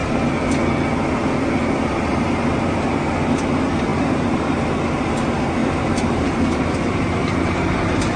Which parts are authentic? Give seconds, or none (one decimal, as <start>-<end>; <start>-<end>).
0.0-2.1; 3.1-3.9; 4.5-5.6